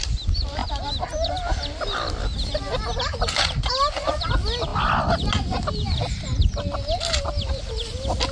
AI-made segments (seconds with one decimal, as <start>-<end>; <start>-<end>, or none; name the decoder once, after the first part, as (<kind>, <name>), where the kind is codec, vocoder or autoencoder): none